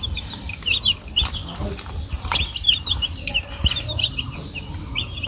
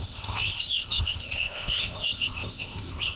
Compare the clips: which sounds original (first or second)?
first